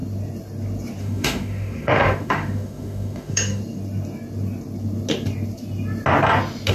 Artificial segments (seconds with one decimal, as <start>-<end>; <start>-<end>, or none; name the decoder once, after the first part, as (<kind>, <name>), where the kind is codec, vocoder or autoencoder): 1.0-3.6 (autoencoder, DAC-VAE)